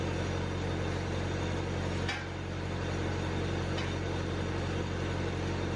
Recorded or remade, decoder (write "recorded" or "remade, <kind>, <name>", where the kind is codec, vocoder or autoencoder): recorded